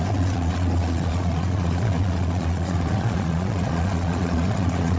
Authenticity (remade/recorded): remade